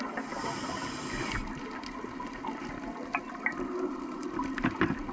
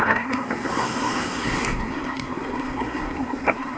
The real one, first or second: first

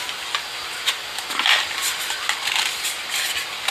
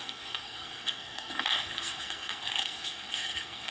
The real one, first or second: first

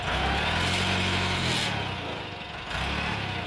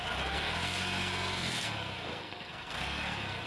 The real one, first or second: first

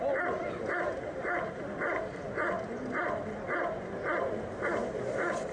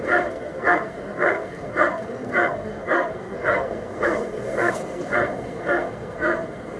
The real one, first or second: first